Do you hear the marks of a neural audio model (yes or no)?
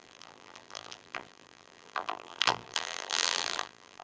yes